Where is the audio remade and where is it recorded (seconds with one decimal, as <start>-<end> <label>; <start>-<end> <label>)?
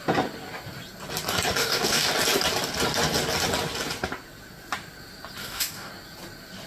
0.0-1.6 recorded; 1.6-2.1 remade; 2.1-5.4 recorded; 5.4-5.9 remade; 5.9-6.7 recorded